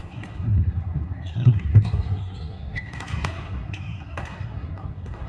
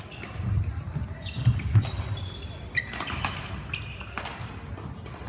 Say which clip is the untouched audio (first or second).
second